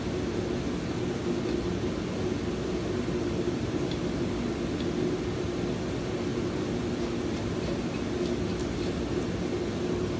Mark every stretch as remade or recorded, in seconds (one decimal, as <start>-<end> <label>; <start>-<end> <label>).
0.0-10.2 recorded